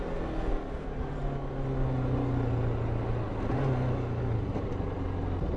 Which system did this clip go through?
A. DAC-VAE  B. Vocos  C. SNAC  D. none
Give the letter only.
D